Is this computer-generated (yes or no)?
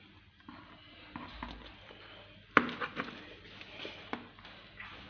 no